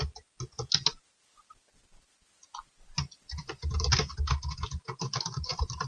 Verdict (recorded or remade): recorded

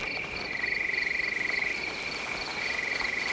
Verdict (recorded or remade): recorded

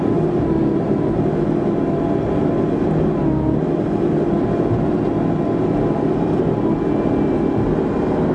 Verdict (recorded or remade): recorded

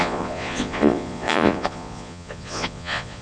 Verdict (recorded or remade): remade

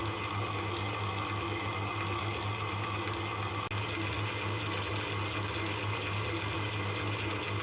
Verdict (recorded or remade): recorded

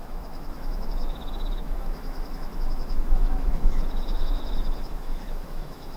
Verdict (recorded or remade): remade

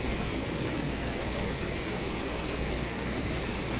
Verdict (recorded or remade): remade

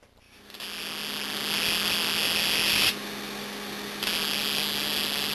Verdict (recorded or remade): recorded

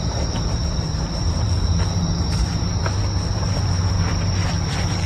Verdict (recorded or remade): remade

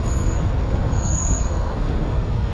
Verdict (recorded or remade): remade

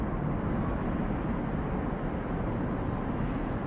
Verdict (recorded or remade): recorded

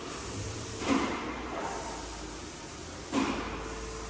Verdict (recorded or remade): recorded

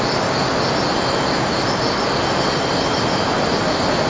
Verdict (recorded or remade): recorded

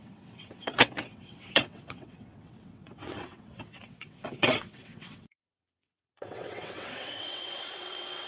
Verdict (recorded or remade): remade